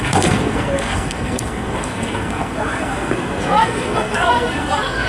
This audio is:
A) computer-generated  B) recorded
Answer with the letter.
A